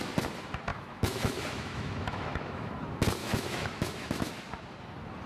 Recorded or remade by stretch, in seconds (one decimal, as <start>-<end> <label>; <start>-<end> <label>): 0.0-0.7 recorded; 0.7-2.7 remade; 2.7-3.2 recorded; 3.2-4.3 remade; 4.3-5.3 recorded